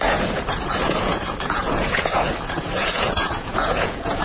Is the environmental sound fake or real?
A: fake